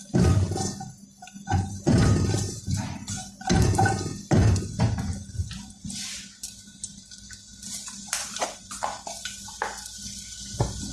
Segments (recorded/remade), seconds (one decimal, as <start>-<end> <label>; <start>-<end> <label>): 0.0-7.5 recorded; 7.5-8.7 remade; 8.7-10.9 recorded